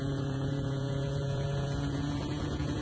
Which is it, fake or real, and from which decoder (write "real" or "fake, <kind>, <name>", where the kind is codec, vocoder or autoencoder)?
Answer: fake, vocoder, Vocos